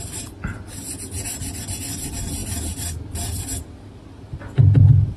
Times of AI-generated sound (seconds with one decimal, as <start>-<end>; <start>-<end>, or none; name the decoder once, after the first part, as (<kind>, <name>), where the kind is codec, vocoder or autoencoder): none